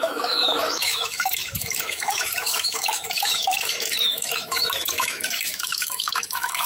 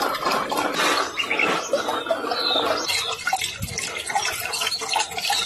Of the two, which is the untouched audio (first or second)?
second